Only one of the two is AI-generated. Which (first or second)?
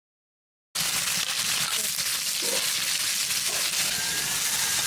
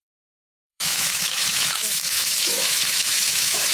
second